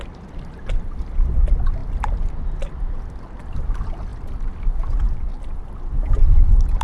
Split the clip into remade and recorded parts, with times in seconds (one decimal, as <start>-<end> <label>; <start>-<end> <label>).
0.0-6.8 recorded